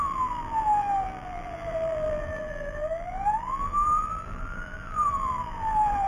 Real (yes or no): no